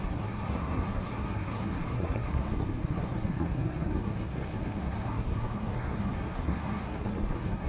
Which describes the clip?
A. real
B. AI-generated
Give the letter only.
B